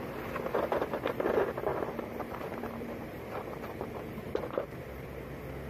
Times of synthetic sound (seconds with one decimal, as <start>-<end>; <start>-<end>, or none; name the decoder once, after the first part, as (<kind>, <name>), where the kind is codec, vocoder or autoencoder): 1.7-5.1 (vocoder, BigVGAN v2)